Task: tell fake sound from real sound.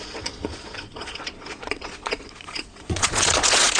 fake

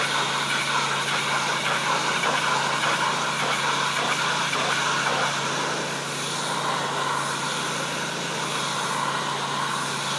real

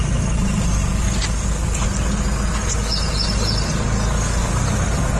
real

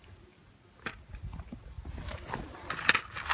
real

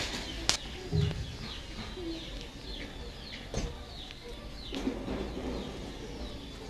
real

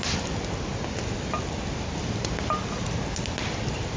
real